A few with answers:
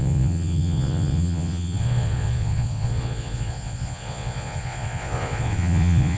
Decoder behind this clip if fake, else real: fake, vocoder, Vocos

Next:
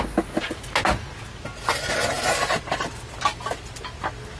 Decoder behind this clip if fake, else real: real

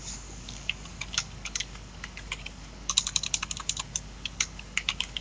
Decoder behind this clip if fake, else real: fake, codec, DAC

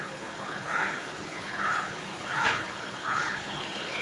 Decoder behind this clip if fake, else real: fake, codec, HILCodec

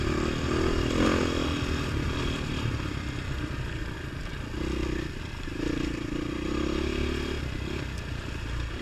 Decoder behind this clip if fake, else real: real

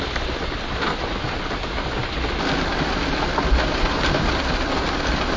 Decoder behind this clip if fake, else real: real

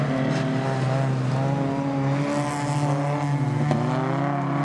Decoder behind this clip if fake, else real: real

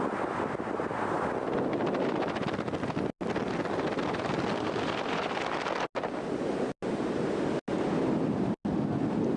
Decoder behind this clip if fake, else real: real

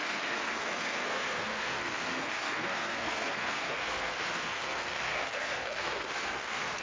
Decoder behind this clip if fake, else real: fake, codec, SNAC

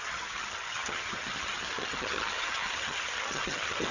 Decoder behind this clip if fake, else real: fake, vocoder, HiFi-GAN